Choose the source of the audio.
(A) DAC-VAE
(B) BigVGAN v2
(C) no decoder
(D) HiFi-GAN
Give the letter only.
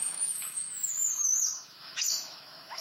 A